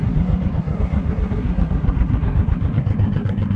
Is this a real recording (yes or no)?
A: no